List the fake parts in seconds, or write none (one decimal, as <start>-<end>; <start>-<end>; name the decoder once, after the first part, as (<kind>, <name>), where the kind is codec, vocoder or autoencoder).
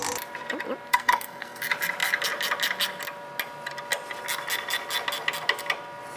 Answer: 0.9-1.6 (codec, SNAC)